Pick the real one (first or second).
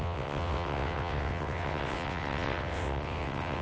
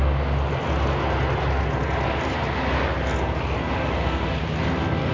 second